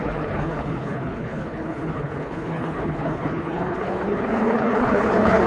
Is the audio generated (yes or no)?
yes